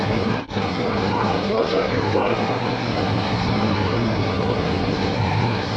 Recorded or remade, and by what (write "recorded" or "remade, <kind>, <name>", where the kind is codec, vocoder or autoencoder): remade, codec, SNAC